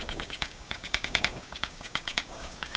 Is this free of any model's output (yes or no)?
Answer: no